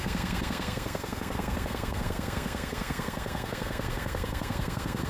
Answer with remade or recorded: remade